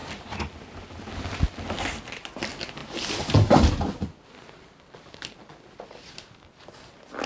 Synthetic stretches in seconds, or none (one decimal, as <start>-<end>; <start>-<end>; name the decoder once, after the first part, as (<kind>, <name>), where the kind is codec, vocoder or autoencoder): none